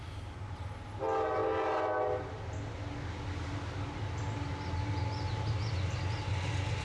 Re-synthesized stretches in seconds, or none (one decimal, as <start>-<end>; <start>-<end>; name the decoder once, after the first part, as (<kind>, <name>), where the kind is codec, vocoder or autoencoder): none